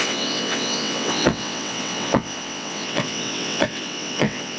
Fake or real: fake